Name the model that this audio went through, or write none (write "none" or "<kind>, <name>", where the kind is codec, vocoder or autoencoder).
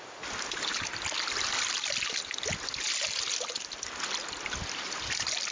none